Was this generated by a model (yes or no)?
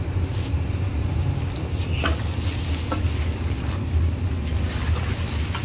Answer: no